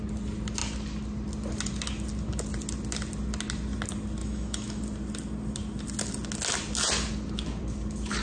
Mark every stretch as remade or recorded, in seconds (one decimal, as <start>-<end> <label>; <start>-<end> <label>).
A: 0.0-4.2 recorded; 4.2-4.8 remade; 4.8-8.2 recorded